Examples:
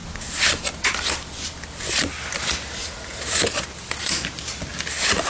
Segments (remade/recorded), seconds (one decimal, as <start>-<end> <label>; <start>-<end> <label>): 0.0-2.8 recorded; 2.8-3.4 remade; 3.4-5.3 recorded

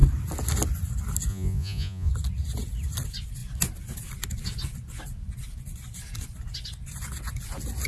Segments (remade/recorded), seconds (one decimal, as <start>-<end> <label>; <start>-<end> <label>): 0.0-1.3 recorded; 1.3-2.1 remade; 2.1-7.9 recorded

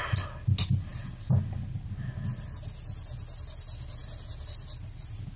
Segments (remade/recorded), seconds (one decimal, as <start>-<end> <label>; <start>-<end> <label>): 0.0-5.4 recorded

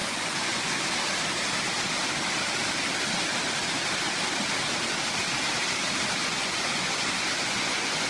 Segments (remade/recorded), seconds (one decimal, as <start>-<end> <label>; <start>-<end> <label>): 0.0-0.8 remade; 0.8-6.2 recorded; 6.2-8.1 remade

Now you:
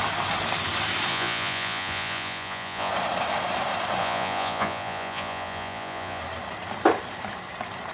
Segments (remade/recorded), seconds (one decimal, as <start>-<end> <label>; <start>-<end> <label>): 0.0-1.1 recorded; 1.1-2.9 remade; 2.9-4.0 recorded; 4.0-6.2 remade; 6.2-7.9 recorded

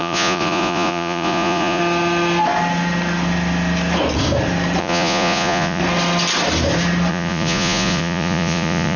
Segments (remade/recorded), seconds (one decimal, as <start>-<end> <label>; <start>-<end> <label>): 0.0-1.8 remade; 1.8-4.8 recorded; 4.8-5.8 remade; 5.8-7.1 recorded; 7.1-9.0 remade

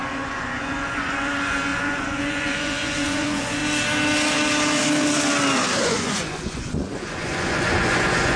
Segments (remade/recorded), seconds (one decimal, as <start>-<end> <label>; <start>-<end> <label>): 0.0-3.6 remade; 3.6-5.8 recorded; 5.8-8.4 remade

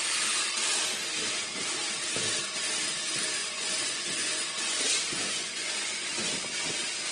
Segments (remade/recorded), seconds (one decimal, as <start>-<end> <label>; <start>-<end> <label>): 0.0-3.4 recorded; 3.4-6.3 remade; 6.3-7.1 recorded